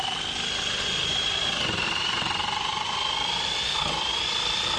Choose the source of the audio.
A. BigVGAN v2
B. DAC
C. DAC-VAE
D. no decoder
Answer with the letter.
A